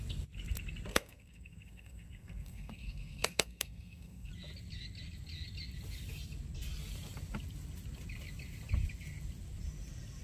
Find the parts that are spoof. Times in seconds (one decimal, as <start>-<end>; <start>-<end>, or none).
0.9-4.3